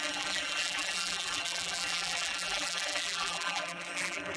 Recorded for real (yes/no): no